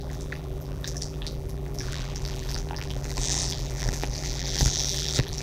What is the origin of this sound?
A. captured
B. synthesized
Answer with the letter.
B